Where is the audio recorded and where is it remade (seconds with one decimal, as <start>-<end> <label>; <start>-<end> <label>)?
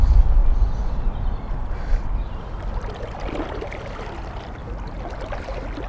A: 0.0-5.9 recorded